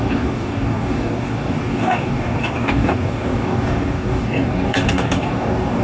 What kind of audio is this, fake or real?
fake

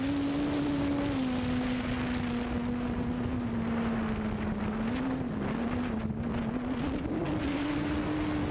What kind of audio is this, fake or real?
real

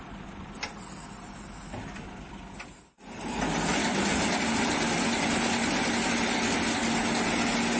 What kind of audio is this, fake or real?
real